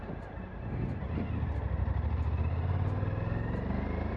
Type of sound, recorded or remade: recorded